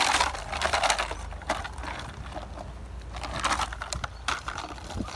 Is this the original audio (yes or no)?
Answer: yes